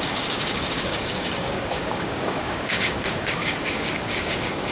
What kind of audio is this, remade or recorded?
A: remade